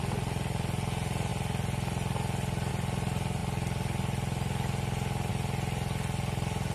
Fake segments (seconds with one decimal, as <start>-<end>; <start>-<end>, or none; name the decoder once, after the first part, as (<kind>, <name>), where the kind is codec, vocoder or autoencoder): none